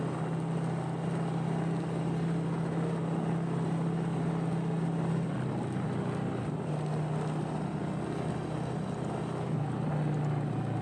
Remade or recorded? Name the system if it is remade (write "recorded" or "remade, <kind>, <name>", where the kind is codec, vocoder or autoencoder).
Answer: recorded